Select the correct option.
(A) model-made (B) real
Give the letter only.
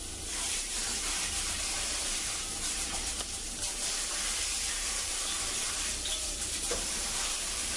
A